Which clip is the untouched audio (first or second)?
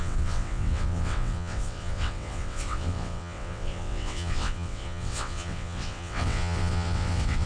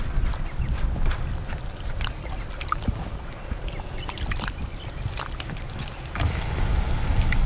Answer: second